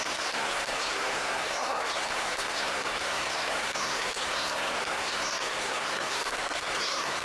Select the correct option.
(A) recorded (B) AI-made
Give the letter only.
B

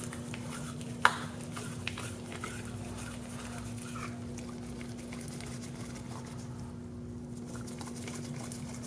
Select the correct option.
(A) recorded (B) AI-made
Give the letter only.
A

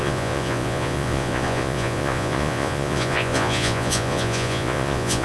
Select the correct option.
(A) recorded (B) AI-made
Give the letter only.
B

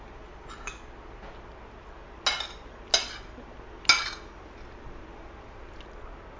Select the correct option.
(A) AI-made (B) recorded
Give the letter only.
B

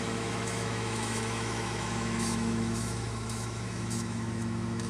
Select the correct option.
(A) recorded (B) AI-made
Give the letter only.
B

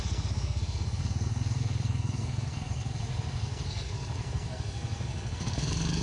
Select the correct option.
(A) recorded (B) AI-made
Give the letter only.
B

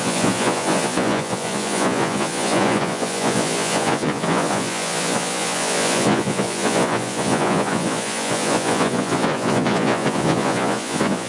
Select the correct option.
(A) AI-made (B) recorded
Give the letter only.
A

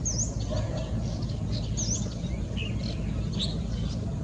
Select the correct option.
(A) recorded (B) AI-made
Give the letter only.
A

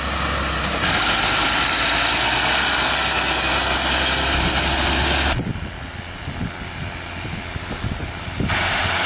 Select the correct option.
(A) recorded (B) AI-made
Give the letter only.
A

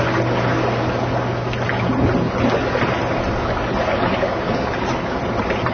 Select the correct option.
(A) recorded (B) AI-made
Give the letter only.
A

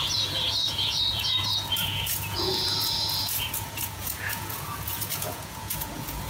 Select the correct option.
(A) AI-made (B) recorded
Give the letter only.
A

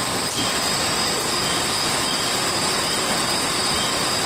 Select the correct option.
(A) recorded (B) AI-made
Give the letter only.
A